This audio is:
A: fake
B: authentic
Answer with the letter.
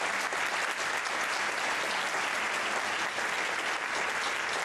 B